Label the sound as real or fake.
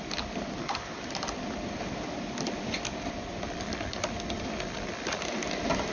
real